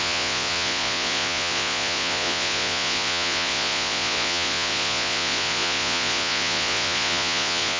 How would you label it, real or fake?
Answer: fake